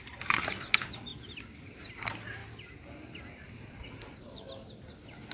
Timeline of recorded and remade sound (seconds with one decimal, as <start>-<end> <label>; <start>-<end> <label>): 0.0-5.3 recorded